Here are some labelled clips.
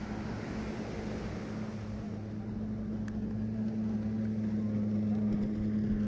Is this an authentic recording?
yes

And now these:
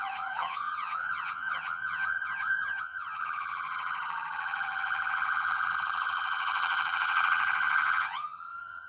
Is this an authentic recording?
no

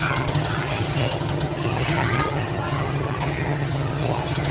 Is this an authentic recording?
no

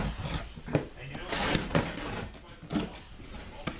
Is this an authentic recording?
yes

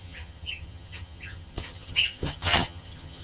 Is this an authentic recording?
no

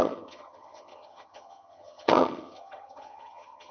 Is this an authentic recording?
no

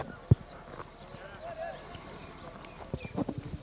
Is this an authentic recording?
yes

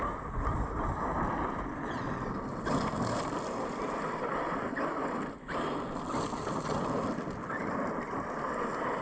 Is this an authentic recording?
yes